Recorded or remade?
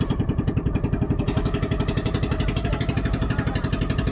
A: recorded